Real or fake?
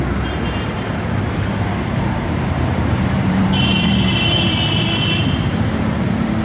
fake